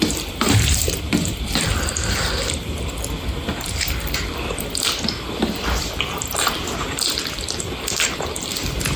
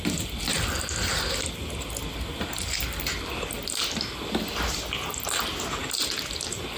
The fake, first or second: first